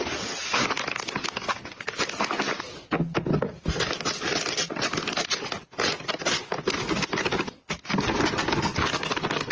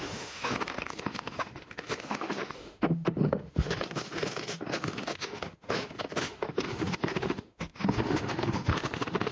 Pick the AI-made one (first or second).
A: second